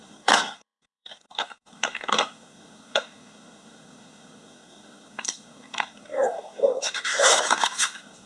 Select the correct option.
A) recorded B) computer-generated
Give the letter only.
B